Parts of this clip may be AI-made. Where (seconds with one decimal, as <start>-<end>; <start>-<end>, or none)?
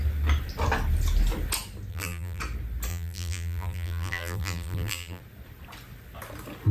1.9-2.4; 2.9-5.2